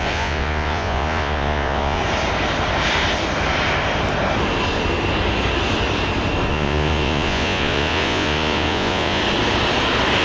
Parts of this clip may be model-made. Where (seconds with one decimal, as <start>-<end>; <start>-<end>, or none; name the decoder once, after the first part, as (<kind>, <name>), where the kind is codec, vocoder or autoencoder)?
0.0-2.0 (vocoder, Vocos); 6.5-9.2